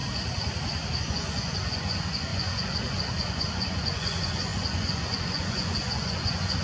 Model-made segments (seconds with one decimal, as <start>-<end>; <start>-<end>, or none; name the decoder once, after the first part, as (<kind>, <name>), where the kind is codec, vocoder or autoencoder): 1.0-6.6 (vocoder, Vocos)